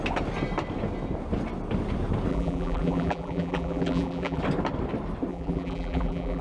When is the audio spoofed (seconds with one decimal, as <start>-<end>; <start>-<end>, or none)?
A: 2.3-4.4; 5.3-6.4